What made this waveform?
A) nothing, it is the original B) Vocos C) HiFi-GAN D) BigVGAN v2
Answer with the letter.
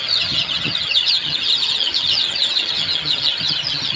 C